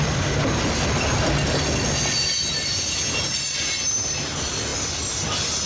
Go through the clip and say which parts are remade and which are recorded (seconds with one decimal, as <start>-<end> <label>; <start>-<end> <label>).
0.0-5.7 recorded